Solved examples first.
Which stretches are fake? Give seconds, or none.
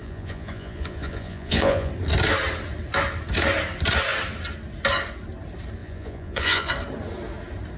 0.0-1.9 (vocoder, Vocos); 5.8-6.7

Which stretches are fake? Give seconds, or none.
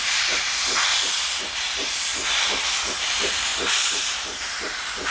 0.0-2.1 (vocoder, BigVGAN v2); 3.1-3.5; 4.1-5.1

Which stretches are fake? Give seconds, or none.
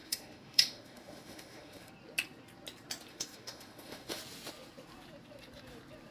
0.0-1.9 (autoencoder, DAC-VAE); 3.1-4.2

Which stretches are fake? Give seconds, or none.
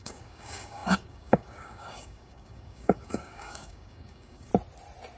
0.0-4.5 (codec, DAC)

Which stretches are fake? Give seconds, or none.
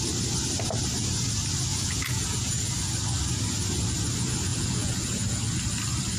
1.7-2.7 (vocoder, Vocos); 4.5-5.4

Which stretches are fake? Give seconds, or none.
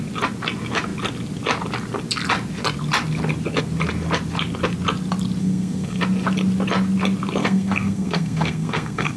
5.4-6.0 (codec, SNAC); 7.4-9.2